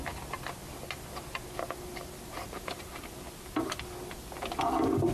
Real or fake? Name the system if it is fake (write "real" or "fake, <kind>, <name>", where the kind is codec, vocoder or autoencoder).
real